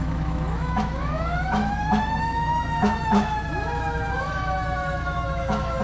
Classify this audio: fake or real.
fake